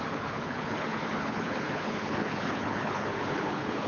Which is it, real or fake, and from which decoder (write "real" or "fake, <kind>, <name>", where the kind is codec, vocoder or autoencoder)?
fake, codec, HILCodec